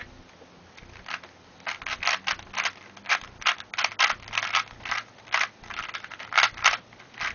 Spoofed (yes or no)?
no